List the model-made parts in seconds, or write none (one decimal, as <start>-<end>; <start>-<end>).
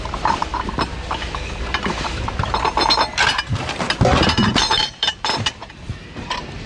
0.0-0.5; 1.6-6.7